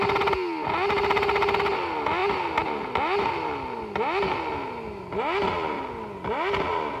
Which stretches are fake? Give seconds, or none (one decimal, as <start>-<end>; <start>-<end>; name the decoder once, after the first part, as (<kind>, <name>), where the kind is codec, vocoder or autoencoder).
none